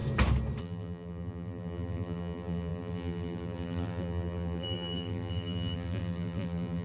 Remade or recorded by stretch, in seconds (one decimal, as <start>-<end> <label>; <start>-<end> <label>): 0.0-0.6 recorded; 0.6-6.8 remade